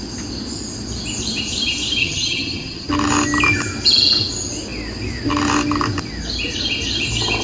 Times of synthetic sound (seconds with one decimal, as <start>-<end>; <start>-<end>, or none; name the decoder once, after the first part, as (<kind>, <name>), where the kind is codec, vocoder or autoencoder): 2.0-2.9 (vocoder, HiFi-GAN)